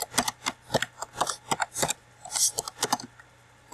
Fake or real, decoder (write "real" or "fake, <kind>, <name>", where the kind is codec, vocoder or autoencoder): real